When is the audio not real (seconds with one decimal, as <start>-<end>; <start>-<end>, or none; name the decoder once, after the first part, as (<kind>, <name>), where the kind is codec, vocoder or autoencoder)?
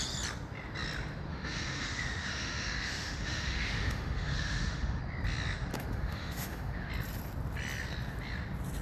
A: 1.3-5.0 (autoencoder, DAC-VAE); 5.7-6.9